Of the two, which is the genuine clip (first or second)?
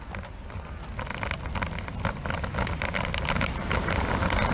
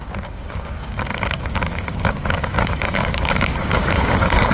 first